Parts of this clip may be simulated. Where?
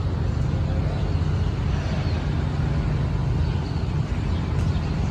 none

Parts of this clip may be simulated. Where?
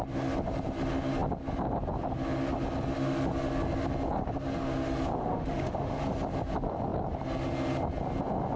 5.2-6.0 (autoencoder, DAC-VAE)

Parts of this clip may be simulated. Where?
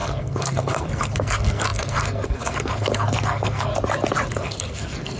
0.0-3.7 (codec, SNAC); 4.3-5.2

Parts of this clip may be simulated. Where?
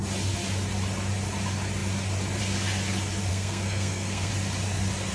3.3-4.3 (codec, SNAC)